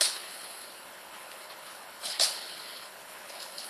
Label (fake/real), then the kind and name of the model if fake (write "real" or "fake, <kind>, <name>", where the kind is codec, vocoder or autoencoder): fake, codec, HILCodec